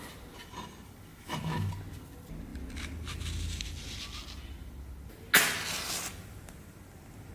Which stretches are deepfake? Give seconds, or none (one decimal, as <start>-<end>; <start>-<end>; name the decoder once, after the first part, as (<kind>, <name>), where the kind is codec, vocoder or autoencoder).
1.1-1.7 (autoencoder, DAC-VAE)